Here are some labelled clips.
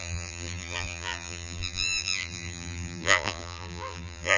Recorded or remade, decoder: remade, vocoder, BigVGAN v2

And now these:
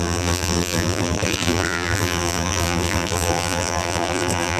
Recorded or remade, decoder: remade, vocoder, BigVGAN v2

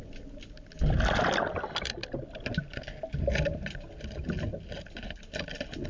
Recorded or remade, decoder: recorded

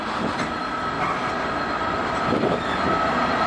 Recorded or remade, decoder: remade, vocoder, BigVGAN v2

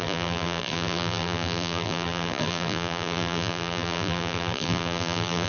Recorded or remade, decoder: remade, vocoder, BigVGAN v2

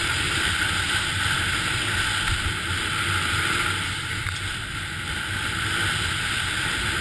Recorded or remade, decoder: recorded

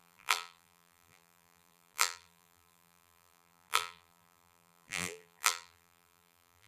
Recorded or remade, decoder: remade, vocoder, BigVGAN v2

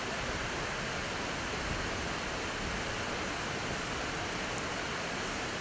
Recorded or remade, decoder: recorded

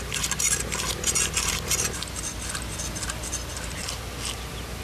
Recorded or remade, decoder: recorded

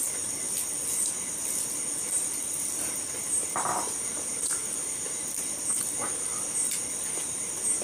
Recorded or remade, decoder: recorded